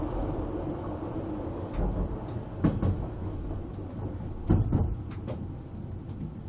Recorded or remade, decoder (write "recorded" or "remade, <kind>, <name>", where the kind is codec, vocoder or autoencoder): recorded